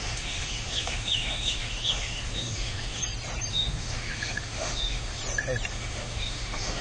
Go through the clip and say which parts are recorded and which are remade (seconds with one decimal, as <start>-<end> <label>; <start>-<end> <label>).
0.0-3.0 remade; 3.0-3.5 recorded; 3.5-5.2 remade; 5.2-5.7 recorded; 5.7-6.8 remade